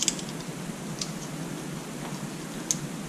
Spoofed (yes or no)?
no